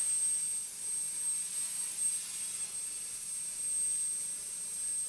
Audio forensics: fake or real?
real